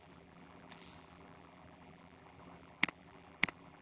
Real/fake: fake